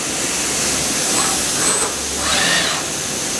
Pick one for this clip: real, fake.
real